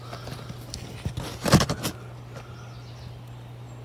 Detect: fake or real real